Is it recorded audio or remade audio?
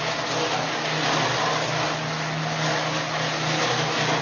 recorded